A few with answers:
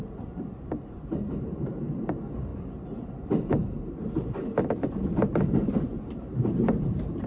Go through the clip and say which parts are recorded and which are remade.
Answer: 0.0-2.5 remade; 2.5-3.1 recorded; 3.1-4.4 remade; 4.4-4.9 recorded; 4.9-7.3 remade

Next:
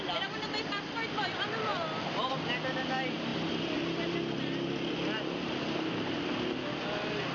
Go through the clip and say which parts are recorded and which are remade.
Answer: 0.0-7.3 recorded

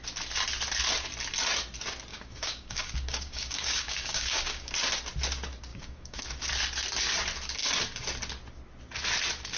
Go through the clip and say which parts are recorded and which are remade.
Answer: 0.0-2.1 recorded; 2.1-4.7 remade; 4.7-5.7 recorded; 5.7-6.2 remade; 6.2-9.6 recorded

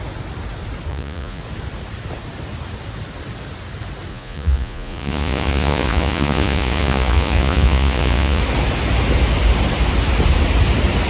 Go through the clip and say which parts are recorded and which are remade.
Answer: 0.0-0.9 recorded; 0.9-1.4 remade; 1.4-4.1 recorded; 4.1-8.4 remade; 8.4-11.1 recorded

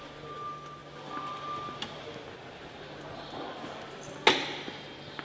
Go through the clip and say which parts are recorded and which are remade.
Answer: 0.0-5.2 recorded

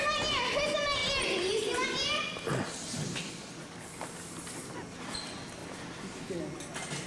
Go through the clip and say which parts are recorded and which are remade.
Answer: 0.0-7.1 recorded

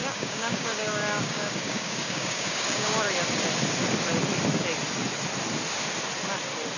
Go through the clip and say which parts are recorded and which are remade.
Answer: 0.0-3.0 remade; 3.0-6.8 recorded

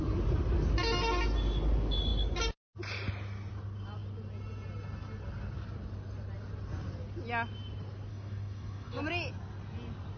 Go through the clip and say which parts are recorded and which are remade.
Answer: 0.0-8.1 recorded; 8.1-9.0 remade; 9.0-10.2 recorded